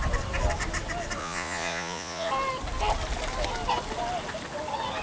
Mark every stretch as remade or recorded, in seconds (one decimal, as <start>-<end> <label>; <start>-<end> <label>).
0.0-1.2 recorded; 1.2-2.3 remade; 2.3-5.0 recorded